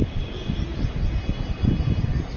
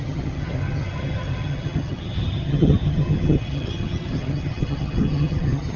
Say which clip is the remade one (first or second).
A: second